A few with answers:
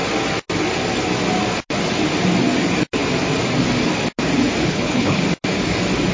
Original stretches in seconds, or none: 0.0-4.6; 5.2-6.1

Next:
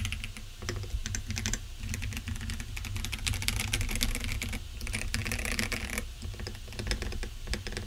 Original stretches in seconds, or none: 0.0-7.9

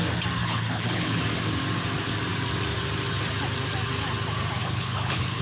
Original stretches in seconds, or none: 0.0-0.4; 1.2-4.6

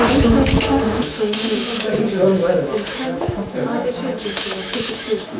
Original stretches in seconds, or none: none

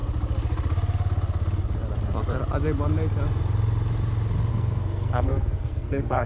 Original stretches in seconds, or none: 0.0-4.5